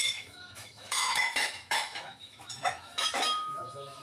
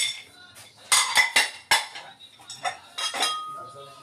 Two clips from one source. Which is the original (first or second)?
second